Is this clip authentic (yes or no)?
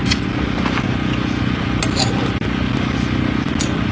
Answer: yes